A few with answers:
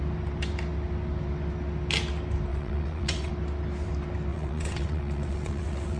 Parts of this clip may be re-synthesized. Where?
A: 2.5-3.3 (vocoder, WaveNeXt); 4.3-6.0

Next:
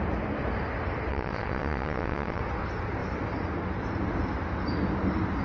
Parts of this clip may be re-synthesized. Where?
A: 1.1-2.4 (vocoder, WaveNeXt)

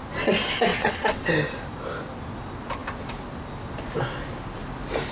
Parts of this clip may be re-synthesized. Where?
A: 0.7-1.3 (vocoder, WaveNeXt)

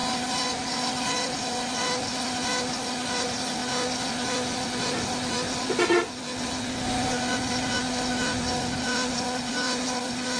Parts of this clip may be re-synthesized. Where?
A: none

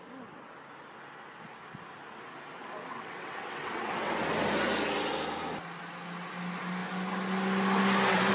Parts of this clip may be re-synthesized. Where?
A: 2.9-4.1 (vocoder, WaveNeXt)

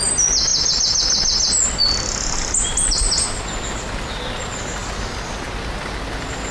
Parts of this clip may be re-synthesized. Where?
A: none